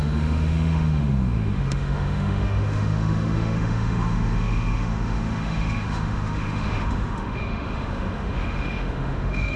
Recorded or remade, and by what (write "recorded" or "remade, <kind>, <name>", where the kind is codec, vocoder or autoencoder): remade, autoencoder, DAC-VAE